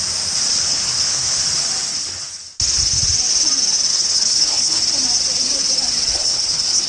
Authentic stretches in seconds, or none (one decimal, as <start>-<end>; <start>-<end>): 0.0-0.5; 1.4-1.9; 2.5-3.9; 4.8-6.1